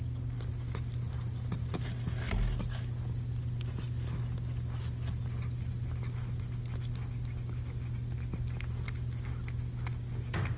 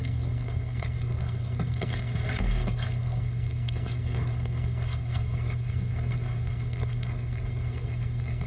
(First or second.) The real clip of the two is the first